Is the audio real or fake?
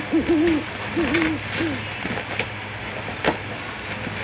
real